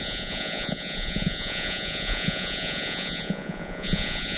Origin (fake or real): fake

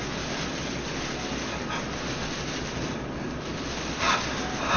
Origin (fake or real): real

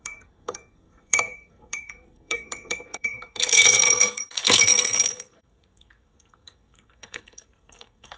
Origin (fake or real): fake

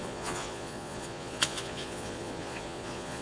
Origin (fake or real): fake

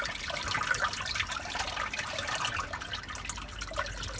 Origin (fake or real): real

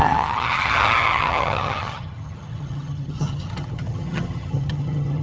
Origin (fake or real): fake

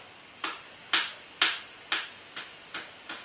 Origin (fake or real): real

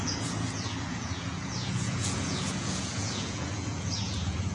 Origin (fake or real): fake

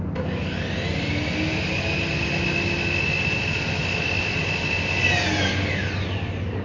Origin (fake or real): real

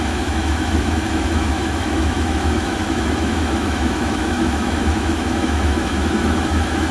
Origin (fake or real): fake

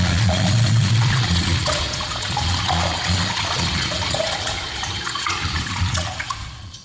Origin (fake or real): fake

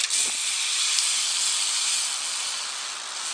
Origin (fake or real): real